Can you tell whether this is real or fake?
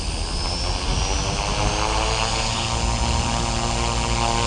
real